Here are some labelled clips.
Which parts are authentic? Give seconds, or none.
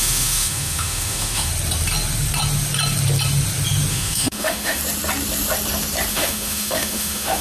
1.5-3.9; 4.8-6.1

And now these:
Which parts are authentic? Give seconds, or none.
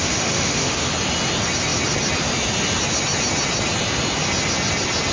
0.9-5.1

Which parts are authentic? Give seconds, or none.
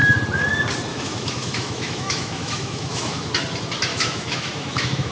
0.0-0.9; 3.3-3.9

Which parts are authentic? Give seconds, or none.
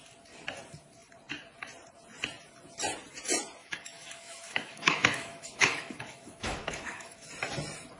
0.0-3.6; 7.3-8.0